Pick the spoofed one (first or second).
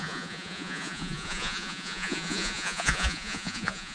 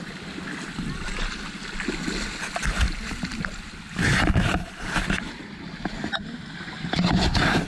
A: first